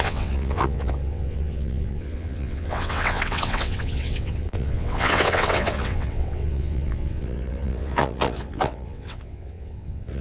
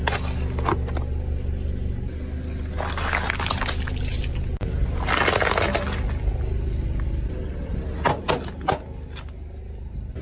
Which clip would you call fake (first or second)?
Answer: first